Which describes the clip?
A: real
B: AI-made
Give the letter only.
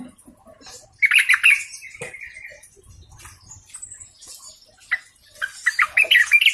A